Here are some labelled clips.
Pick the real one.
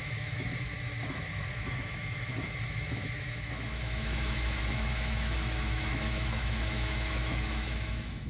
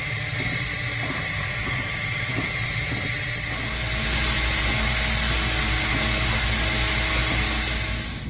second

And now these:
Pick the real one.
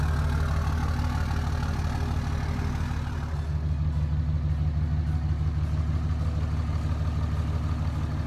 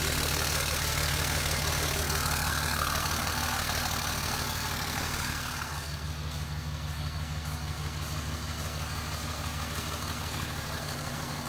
first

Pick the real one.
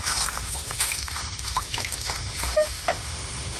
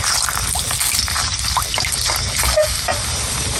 second